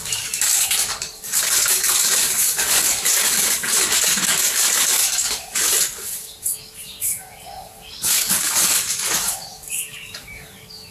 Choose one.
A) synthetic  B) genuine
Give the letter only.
A